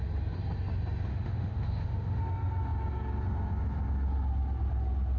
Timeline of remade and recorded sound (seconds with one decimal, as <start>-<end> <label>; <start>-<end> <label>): 0.0-1.1 recorded; 1.1-2.2 remade; 2.2-5.2 recorded